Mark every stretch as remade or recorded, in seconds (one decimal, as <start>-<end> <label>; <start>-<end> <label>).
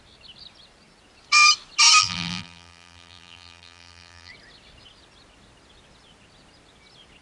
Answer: 0.0-2.0 recorded; 2.0-4.3 remade; 4.3-7.2 recorded